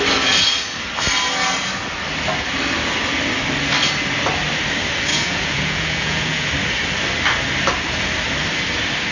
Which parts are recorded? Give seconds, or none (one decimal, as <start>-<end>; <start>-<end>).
0.0-5.1; 6.5-9.1